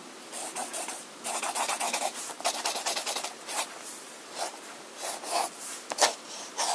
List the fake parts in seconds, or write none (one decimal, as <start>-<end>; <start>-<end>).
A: 0.6-4.6